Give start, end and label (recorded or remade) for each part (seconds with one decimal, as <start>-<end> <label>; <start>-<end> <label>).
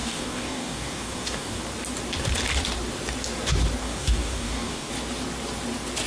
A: 0.0-1.6 remade; 1.6-3.8 recorded; 3.8-4.9 remade; 4.9-6.1 recorded